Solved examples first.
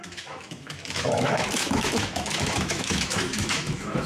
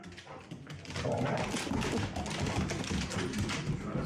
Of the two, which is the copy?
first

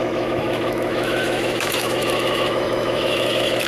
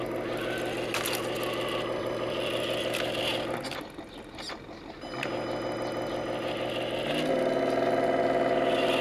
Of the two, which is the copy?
first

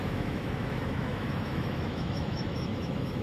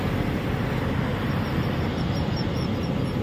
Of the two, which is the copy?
first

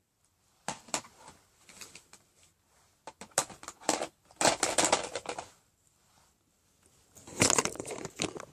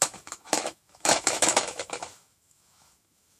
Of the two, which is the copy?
second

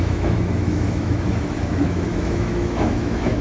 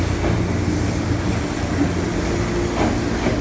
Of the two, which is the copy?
first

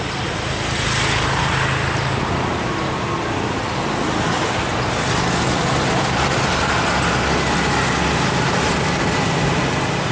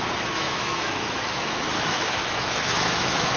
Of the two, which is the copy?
second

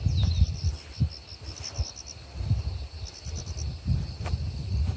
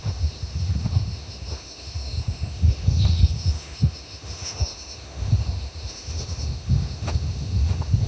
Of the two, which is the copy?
second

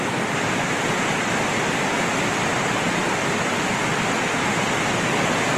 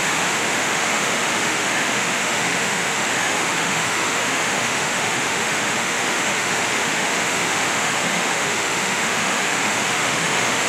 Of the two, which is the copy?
second